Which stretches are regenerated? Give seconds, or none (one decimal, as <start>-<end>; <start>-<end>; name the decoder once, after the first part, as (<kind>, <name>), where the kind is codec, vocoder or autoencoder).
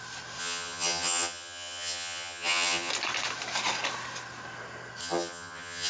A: 0.4-2.9 (vocoder, HiFi-GAN); 5.0-5.9